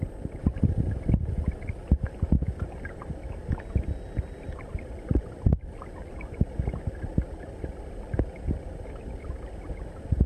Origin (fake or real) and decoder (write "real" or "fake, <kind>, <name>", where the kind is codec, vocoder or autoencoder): real